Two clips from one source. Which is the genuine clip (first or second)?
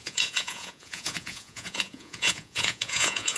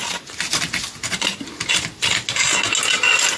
second